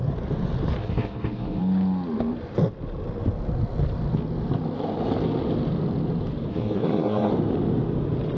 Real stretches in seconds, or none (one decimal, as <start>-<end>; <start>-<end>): 0.0-0.8; 1.6-6.5; 7.3-8.4